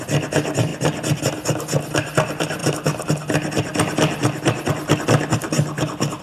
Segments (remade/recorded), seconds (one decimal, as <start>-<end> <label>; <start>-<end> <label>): 0.0-6.2 recorded